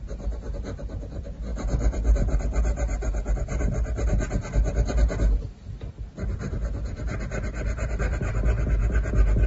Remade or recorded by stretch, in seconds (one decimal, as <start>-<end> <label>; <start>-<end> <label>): 0.0-9.5 recorded